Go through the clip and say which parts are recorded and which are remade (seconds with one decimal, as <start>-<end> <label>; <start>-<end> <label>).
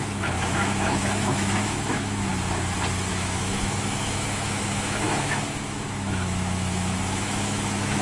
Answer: 0.0-2.3 remade; 2.3-3.1 recorded; 3.1-8.0 remade